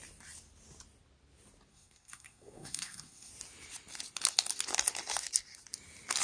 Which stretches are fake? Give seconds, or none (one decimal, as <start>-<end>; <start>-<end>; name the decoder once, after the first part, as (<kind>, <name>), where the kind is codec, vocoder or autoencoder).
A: 1.7-3.3 (codec, SNAC)